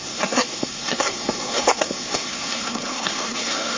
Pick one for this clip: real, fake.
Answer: fake